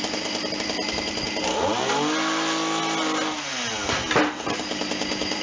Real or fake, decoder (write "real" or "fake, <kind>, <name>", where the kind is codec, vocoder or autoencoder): real